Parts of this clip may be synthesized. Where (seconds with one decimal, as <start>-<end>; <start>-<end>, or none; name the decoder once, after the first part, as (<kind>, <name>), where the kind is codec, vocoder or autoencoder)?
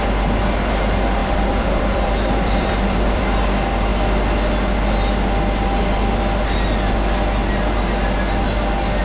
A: 1.2-3.2 (vocoder, BigVGAN v2)